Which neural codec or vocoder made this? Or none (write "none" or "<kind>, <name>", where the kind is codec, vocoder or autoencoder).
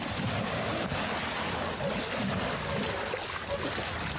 none